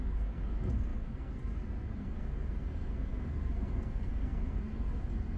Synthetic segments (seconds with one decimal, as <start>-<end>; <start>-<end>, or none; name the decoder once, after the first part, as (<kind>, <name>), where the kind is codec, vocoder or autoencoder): 0.0-5.4 (codec, SNAC)